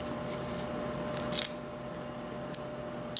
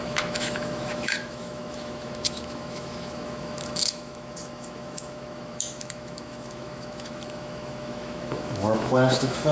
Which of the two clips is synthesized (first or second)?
second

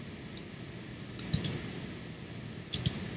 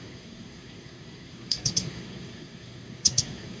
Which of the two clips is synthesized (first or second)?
second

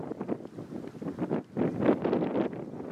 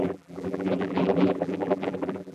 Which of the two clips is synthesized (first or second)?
second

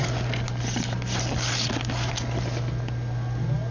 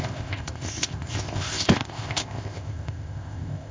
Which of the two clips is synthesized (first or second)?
second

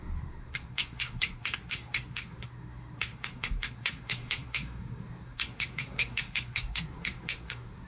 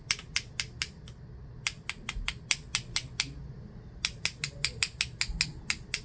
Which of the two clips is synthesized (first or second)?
first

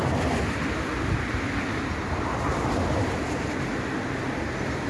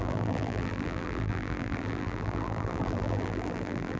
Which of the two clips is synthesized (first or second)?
second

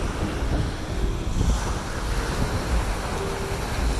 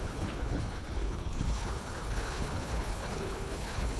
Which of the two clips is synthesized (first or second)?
second